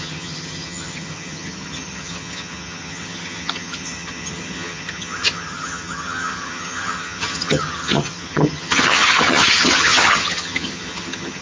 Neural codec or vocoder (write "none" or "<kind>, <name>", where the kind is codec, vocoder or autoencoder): vocoder, HiFi-GAN